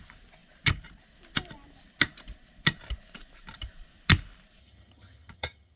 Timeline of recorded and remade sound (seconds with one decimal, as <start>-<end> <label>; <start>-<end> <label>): 0.0-4.6 recorded; 4.6-5.8 remade